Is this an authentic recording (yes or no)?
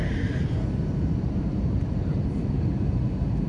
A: no